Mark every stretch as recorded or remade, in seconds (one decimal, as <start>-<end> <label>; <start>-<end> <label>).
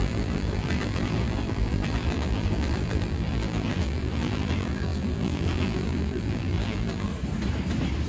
0.0-7.1 remade; 7.1-8.1 recorded